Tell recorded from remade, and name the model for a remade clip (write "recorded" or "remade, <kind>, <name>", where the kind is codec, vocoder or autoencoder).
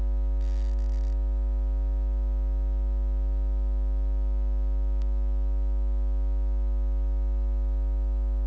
recorded